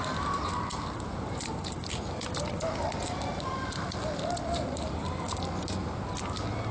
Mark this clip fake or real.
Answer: real